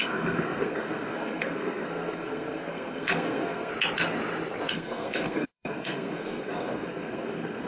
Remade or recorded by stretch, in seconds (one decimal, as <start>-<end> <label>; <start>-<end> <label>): 0.0-3.7 remade; 3.7-4.7 recorded; 4.7-7.7 remade